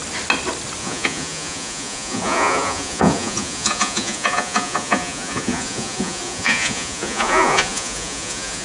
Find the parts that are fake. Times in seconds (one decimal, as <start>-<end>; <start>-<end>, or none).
0.8-8.6